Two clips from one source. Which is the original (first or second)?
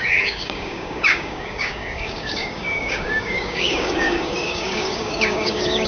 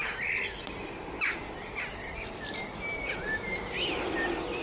second